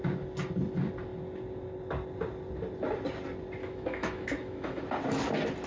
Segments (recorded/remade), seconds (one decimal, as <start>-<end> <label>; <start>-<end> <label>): 0.0-3.6 recorded; 3.6-4.8 remade; 4.8-5.7 recorded

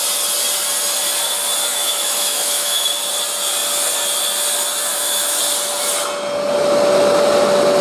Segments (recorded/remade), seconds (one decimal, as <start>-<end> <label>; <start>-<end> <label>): 0.0-1.7 recorded; 1.7-3.0 remade; 3.0-4.9 recorded; 4.9-5.4 remade; 5.4-7.8 recorded

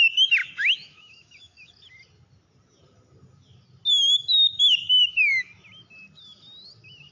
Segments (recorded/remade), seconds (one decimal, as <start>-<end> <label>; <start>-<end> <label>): 0.0-0.4 recorded; 0.4-1.7 remade; 1.7-4.8 recorded; 4.8-5.5 remade; 5.5-7.1 recorded